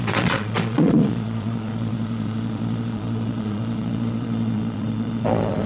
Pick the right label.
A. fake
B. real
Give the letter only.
A